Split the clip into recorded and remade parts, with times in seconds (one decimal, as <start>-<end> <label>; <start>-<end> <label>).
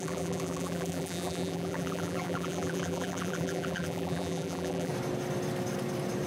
0.0-4.9 remade; 4.9-6.3 recorded